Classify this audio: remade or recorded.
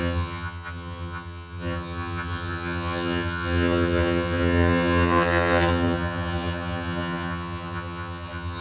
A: remade